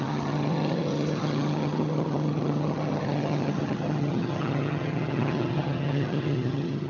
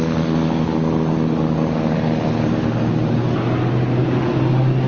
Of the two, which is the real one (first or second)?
second